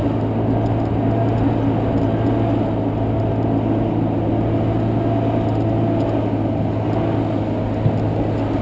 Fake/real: real